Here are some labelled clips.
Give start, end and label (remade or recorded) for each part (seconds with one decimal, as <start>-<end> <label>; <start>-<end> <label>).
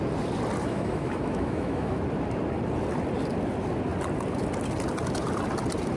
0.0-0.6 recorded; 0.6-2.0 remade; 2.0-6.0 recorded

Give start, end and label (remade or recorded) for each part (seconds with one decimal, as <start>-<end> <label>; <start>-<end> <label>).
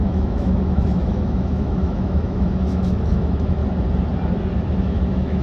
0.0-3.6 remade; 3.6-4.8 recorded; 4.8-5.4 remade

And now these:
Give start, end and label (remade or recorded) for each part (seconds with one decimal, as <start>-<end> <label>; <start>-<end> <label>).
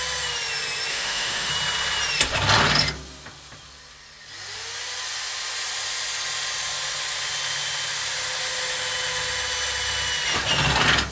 0.0-0.9 recorded; 0.9-1.5 remade; 1.5-11.1 recorded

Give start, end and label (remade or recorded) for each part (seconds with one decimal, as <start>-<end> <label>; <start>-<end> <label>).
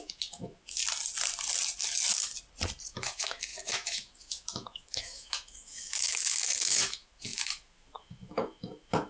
0.0-0.8 remade; 0.8-2.9 recorded; 2.9-9.1 remade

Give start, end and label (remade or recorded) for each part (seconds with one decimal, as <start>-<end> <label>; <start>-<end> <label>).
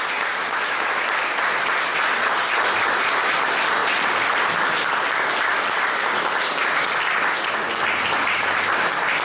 0.0-0.4 recorded; 0.4-1.0 remade; 1.0-9.2 recorded